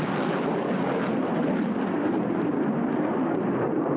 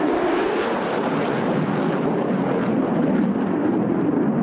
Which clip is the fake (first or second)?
first